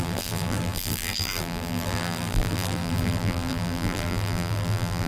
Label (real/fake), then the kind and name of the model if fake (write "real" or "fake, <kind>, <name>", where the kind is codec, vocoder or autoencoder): fake, vocoder, BigVGAN v2